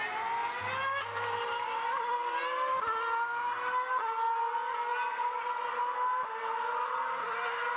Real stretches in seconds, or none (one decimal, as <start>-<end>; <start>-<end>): 0.0-7.8